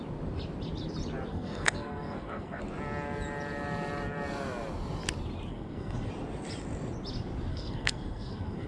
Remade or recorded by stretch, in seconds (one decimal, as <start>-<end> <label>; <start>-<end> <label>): 0.0-1.3 recorded; 1.3-2.6 remade; 2.6-5.5 recorded; 5.5-6.1 remade; 6.1-7.5 recorded; 7.5-8.7 remade